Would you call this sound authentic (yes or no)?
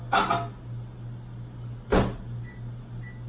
yes